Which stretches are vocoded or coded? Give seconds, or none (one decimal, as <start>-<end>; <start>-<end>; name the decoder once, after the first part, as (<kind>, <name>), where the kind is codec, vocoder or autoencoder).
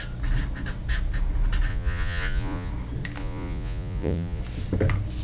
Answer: 1.7-2.7 (vocoder, Vocos); 3.2-4.4